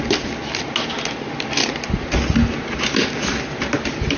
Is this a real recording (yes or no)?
yes